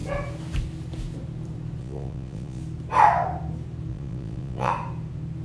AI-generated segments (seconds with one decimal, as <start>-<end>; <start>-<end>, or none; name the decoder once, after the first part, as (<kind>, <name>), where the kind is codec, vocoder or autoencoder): 1.8-2.6 (vocoder, Vocos); 3.9-4.7

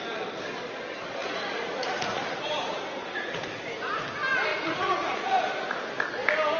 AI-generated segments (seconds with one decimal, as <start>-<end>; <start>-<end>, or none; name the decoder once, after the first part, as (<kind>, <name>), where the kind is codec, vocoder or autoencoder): 1.2-3.6 (vocoder, Vocos); 4.5-5.5

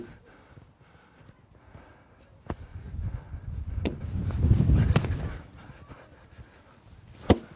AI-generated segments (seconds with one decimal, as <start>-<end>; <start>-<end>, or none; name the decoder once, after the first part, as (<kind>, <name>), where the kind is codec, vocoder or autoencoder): 2.7-4.0 (vocoder, Vocos)

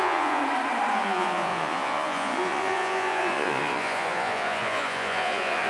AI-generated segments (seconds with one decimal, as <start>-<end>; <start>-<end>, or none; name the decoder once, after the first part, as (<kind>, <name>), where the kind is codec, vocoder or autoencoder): 0.0-0.4 (vocoder, Vocos); 0.9-5.7